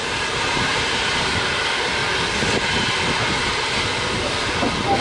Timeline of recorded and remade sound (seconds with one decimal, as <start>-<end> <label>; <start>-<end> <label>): 0.0-2.0 remade; 2.0-5.0 recorded